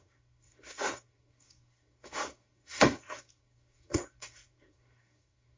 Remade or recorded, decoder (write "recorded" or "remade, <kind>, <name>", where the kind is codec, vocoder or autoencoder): remade, codec, SNAC